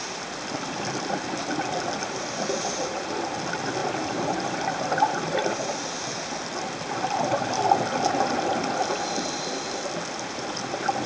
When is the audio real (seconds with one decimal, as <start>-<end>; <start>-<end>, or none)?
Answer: 0.0-2.0; 3.1-3.8; 5.8-11.1